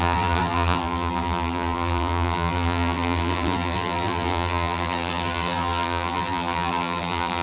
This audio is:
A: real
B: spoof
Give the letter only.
B